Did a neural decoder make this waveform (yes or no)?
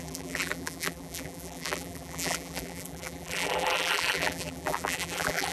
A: yes